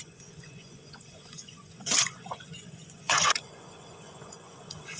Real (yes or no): no